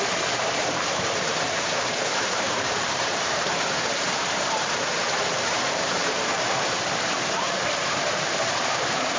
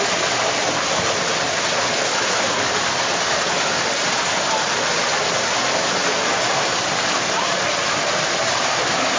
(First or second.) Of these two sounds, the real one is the second